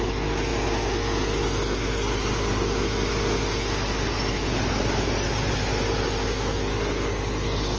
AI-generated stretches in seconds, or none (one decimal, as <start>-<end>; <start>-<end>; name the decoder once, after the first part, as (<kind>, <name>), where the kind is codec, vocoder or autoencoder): none